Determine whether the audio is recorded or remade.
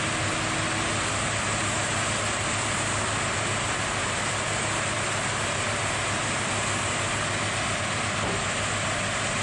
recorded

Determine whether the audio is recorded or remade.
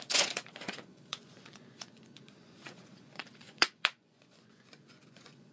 remade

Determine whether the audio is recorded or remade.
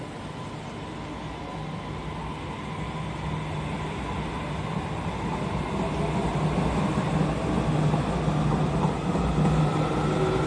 recorded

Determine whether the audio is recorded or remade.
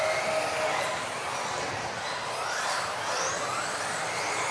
recorded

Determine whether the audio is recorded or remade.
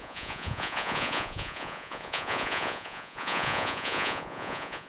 remade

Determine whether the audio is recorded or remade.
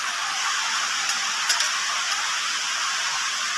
recorded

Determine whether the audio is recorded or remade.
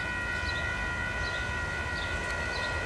recorded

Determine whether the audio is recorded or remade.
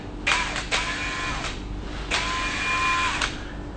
recorded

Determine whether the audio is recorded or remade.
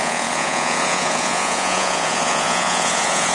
remade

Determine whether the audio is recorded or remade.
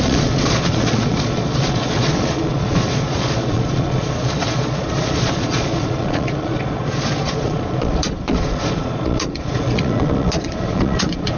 remade